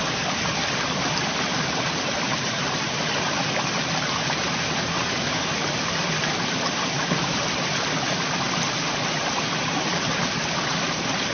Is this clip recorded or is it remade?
recorded